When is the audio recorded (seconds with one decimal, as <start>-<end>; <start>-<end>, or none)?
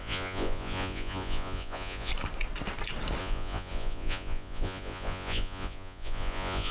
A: 2.1-3.2